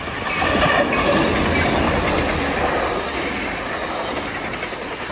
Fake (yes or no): no